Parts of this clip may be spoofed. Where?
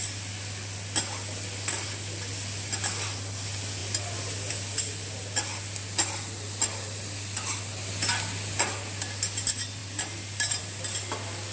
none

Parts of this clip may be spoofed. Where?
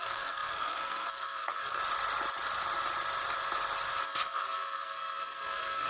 0.0-1.8 (codec, SNAC); 4.0-5.9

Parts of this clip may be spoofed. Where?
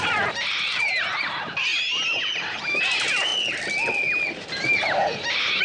0.0-1.7 (vocoder, BigVGAN v2); 2.3-3.3; 4.3-5.6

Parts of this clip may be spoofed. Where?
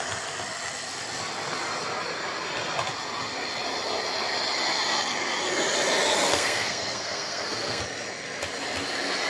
6.3-7.8 (codec, SNAC)